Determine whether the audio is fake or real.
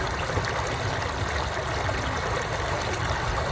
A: real